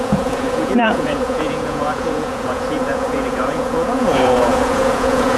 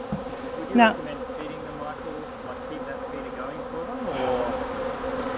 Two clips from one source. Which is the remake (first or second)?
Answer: first